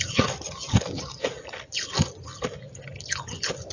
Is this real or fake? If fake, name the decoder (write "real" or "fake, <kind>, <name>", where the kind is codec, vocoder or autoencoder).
real